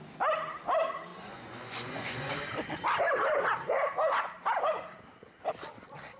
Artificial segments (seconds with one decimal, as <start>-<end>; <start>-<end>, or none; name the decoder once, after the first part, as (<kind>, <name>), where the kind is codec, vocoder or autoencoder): 1.1-2.3 (vocoder, Vocos)